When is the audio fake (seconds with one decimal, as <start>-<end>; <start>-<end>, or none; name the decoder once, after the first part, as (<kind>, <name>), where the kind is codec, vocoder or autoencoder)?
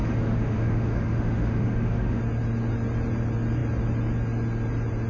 0.0-2.2 (autoencoder, DAC-VAE)